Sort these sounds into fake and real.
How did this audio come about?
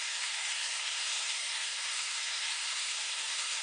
fake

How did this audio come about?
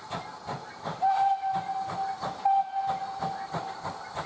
real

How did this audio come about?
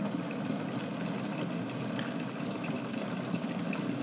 real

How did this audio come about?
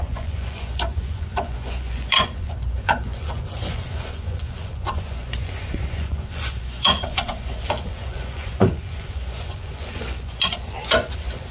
fake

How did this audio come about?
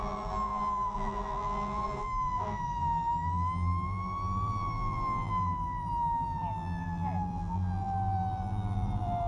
fake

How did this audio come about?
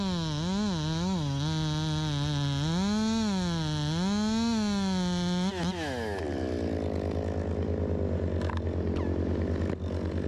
real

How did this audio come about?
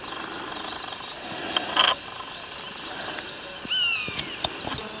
real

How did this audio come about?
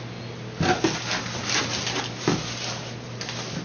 real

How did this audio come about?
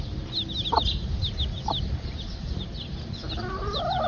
real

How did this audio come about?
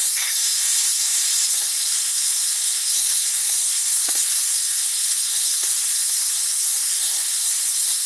fake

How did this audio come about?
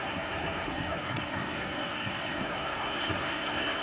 fake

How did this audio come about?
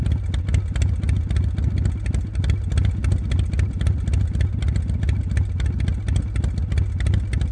real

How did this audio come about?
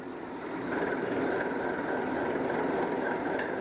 real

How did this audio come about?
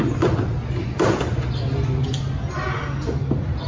real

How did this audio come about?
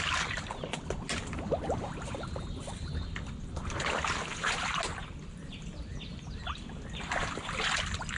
real